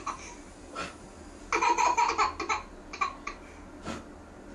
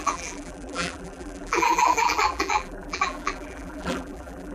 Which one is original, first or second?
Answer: first